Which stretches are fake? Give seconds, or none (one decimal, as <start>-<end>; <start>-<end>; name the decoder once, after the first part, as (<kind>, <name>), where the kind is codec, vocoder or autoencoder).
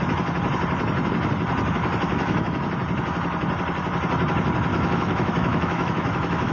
2.1-2.6 (autoencoder, DAC-VAE); 4.7-6.5